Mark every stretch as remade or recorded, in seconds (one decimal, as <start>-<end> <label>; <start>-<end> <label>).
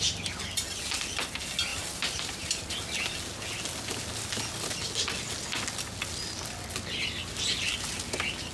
0.0-1.7 recorded; 1.7-2.7 remade; 2.7-8.5 recorded